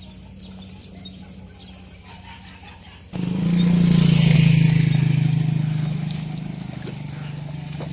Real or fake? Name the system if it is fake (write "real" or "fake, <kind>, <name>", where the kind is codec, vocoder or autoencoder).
real